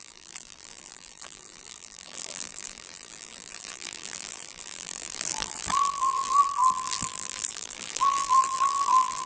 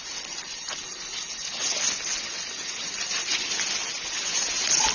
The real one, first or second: second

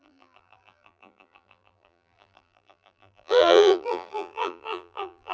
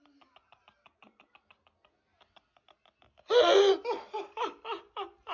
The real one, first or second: second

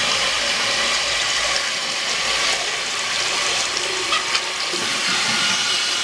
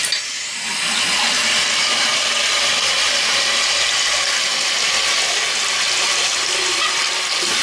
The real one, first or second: second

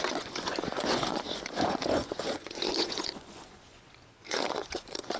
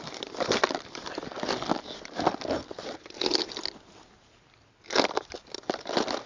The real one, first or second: second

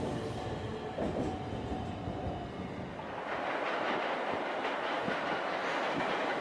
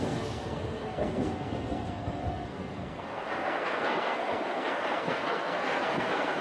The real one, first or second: first